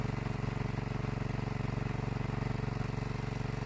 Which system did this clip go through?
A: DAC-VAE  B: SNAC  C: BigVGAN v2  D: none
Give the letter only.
D